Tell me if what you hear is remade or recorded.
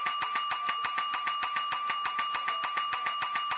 recorded